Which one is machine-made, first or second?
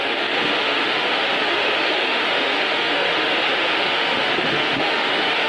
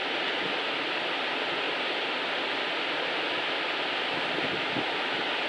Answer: first